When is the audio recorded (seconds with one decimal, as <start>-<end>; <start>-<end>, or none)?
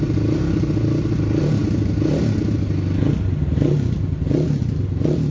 0.0-5.3